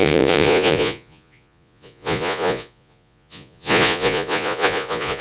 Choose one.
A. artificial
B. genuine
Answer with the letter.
A